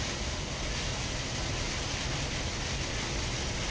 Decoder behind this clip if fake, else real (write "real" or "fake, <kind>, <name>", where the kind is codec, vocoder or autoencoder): real